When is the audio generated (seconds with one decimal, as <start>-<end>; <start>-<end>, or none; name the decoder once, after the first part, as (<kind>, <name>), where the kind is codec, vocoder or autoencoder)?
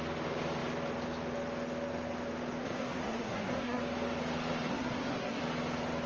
2.6-3.8 (codec, SNAC); 4.7-5.4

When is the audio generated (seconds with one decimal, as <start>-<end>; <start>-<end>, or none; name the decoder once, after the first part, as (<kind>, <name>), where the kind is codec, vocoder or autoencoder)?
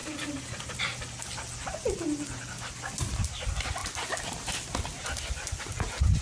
none